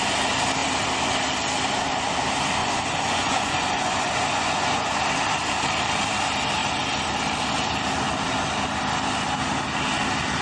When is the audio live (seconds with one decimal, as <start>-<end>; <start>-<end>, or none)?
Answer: 0.0-2.6; 5.0-10.4